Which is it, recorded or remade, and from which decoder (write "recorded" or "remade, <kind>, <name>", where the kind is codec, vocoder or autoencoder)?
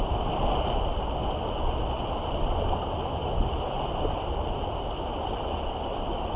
recorded